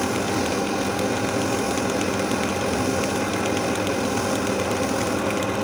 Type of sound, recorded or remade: recorded